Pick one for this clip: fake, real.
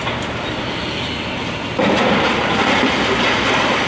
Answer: real